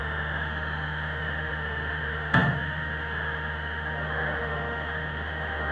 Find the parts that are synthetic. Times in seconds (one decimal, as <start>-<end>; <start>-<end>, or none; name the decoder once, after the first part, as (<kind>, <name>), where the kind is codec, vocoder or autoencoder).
0.0-5.7 (autoencoder, DAC-VAE)